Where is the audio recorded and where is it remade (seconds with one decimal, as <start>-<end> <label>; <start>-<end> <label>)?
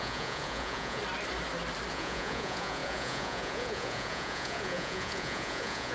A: 0.0-1.0 remade; 1.0-1.9 recorded; 1.9-5.9 remade